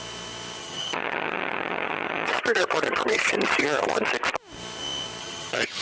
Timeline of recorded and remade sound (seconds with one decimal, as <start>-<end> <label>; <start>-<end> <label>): 0.0-0.6 recorded; 0.6-4.1 remade; 4.1-5.2 recorded; 5.2-5.8 remade